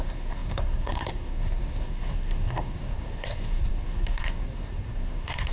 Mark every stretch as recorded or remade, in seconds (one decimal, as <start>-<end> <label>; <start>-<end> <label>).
0.0-5.5 remade